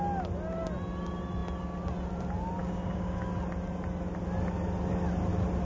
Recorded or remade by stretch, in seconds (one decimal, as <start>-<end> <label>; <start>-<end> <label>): 0.0-2.6 recorded; 2.6-3.3 remade; 3.3-5.6 recorded